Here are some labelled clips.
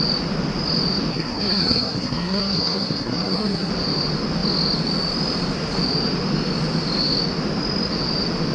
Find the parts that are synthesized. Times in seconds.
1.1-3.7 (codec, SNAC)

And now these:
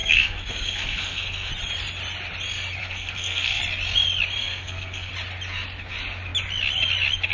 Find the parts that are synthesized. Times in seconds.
0.0-1.5 (codec, SNAC); 2.8-3.6; 4.4-5.1

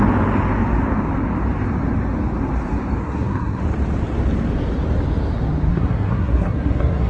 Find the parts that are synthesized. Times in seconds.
3.0-3.6 (codec, SNAC); 5.7-7.1

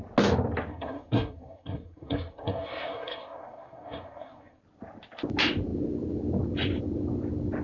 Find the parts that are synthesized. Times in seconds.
0.7-4.6 (codec, SNAC)

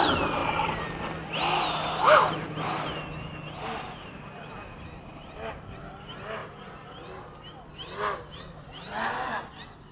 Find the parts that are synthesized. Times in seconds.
none

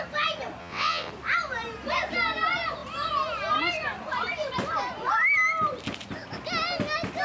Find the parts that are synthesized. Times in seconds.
0.6-1.1 (vocoder, WaveNeXt)